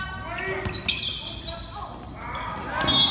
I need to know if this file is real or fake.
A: real